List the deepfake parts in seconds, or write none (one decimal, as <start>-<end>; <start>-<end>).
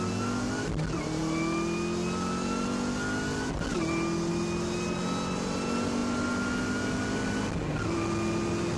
none